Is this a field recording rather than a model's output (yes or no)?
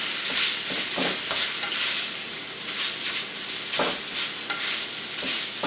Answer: yes